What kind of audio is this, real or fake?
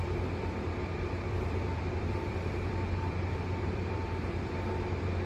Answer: fake